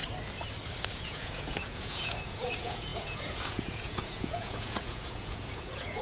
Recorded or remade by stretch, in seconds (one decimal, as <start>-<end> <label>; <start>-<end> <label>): 0.0-0.9 recorded; 0.9-6.0 remade